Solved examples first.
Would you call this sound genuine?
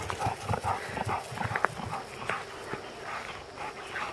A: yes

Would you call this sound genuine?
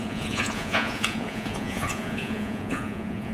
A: no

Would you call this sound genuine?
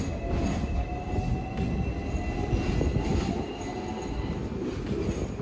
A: yes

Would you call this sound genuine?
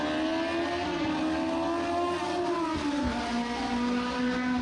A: yes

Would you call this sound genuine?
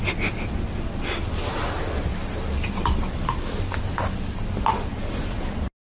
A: yes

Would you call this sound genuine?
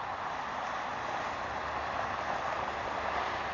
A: yes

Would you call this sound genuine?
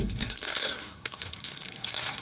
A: no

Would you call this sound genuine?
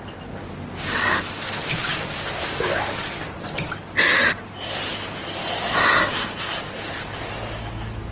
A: yes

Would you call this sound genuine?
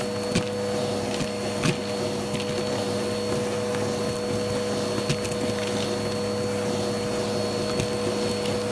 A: yes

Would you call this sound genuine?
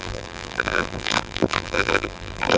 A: no